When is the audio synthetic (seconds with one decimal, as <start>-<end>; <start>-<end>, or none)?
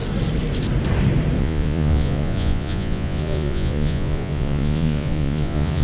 1.4-5.8